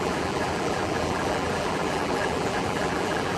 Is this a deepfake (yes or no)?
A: yes